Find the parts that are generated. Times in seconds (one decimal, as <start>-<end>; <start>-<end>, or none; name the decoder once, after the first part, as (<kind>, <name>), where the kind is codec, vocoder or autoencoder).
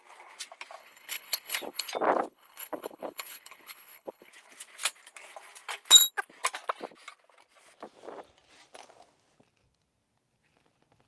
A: 0.8-1.9 (codec, HILCodec); 2.3-4.3